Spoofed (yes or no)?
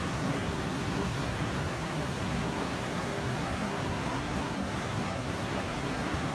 yes